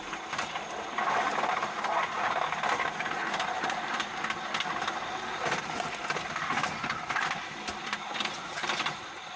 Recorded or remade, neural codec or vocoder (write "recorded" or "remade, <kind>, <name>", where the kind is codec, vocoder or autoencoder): recorded